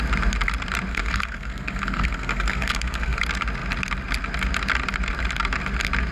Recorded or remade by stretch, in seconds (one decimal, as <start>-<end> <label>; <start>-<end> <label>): 0.0-0.9 recorded; 0.9-3.2 remade; 3.2-6.1 recorded